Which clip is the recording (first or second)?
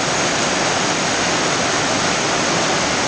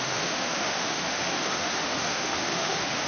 first